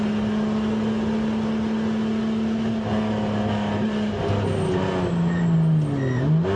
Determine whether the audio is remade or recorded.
recorded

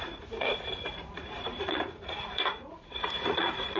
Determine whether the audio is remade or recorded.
remade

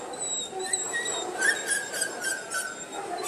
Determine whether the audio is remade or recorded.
recorded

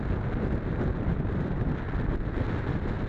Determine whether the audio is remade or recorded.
recorded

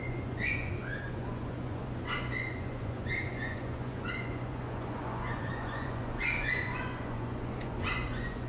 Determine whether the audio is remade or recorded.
remade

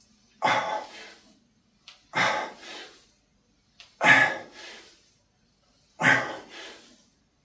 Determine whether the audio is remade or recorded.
recorded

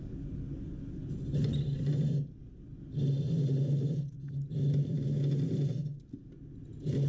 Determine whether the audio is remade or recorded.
recorded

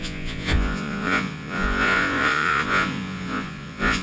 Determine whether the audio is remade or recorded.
remade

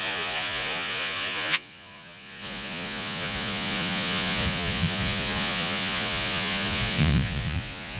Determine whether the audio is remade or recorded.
remade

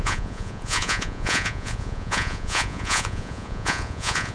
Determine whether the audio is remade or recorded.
remade